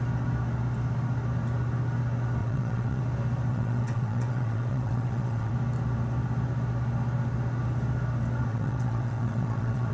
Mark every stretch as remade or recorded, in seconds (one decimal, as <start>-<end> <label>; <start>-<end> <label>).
0.0-2.4 recorded; 2.4-3.0 remade; 3.0-3.5 recorded; 3.5-5.5 remade; 5.5-8.5 recorded; 8.5-9.9 remade